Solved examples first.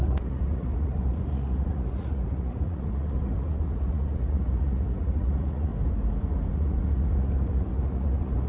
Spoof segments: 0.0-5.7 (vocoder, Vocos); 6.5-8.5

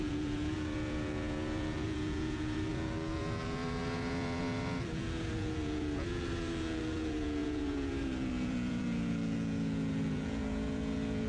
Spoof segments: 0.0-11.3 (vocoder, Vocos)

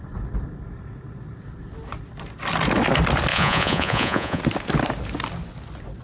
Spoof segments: 3.3-4.4 (vocoder, Vocos)